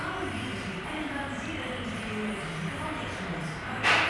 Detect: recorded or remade recorded